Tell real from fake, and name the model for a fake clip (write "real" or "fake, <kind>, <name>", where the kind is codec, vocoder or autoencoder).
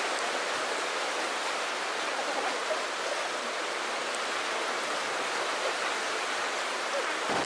real